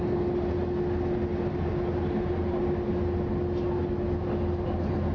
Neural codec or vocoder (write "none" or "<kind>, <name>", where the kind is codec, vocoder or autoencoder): none